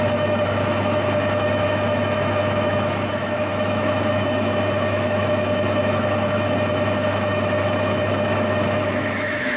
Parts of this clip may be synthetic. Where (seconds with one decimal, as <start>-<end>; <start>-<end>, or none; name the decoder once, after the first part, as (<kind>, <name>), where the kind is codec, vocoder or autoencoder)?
0.0-9.6 (autoencoder, DAC-VAE)